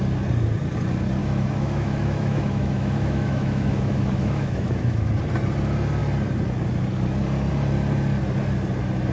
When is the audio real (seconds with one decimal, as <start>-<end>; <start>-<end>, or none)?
0.0-1.2; 5.1-9.1